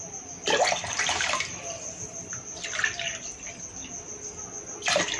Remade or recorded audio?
recorded